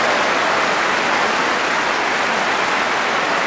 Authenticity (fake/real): real